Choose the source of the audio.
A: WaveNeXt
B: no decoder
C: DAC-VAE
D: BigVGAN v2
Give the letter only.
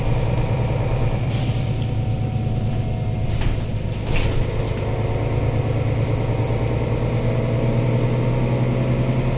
B